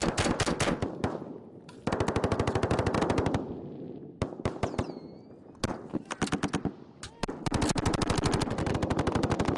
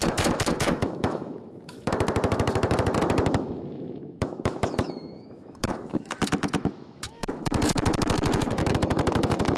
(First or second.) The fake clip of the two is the second